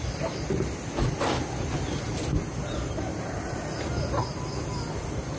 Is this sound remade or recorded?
recorded